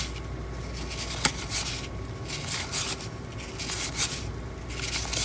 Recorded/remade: recorded